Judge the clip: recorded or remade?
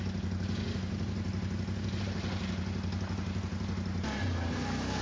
recorded